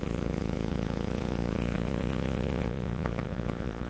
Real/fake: fake